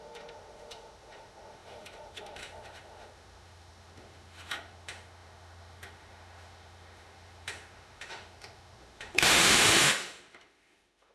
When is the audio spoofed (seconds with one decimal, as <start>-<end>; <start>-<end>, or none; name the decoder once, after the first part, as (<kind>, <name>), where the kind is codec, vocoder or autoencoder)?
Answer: 0.0-11.1 (autoencoder, DAC-VAE)